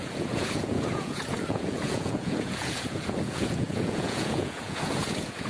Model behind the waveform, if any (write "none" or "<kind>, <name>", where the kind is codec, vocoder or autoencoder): vocoder, Vocos